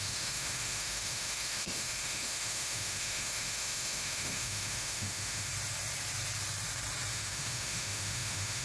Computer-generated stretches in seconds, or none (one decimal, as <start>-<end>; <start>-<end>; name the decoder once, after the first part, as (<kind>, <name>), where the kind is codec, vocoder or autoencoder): 0.0-5.5 (autoencoder, DAC-VAE); 7.1-8.6